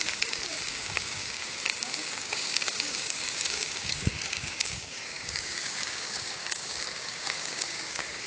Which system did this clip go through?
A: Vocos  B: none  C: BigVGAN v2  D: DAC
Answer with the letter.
D